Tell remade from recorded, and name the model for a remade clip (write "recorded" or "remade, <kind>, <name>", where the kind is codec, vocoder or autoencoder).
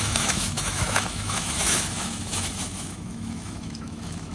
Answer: remade, autoencoder, DAC-VAE